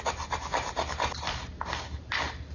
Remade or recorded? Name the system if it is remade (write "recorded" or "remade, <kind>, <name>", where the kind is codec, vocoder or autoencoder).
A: recorded